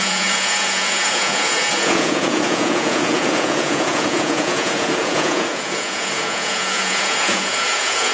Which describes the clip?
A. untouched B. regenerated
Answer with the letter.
B